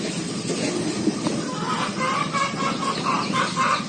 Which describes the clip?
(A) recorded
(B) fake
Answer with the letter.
A